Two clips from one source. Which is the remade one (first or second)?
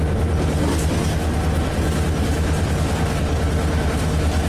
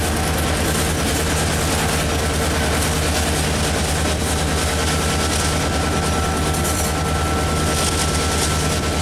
first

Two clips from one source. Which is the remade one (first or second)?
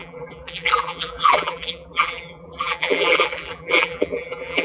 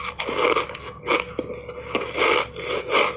first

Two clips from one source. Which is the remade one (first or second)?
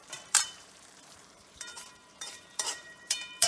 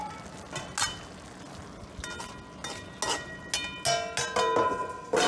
first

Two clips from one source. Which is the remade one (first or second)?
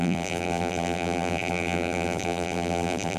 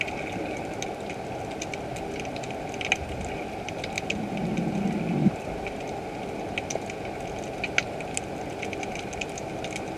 first